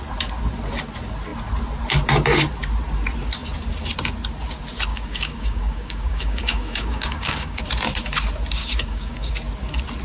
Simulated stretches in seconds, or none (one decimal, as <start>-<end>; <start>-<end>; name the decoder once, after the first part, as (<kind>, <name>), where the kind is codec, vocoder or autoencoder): 4.9-7.6 (codec, DAC); 8.6-9.3